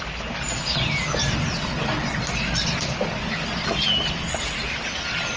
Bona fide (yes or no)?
yes